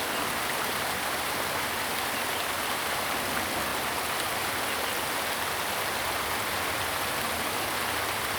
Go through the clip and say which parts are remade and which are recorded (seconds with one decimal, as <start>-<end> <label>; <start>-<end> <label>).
0.0-8.4 recorded